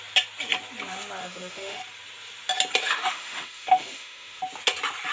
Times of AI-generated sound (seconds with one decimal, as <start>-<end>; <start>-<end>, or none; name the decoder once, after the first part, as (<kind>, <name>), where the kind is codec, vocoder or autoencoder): 1.2-1.8 (autoencoder, DAC-VAE); 2.8-4.4